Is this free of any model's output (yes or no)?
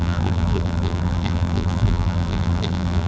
no